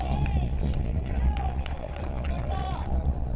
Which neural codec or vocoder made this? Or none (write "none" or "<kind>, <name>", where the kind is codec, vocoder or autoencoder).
vocoder, Vocos